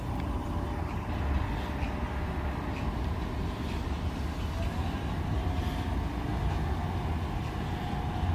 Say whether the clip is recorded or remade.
recorded